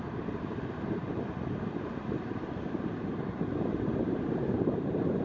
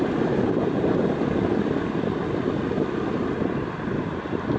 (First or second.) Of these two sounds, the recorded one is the second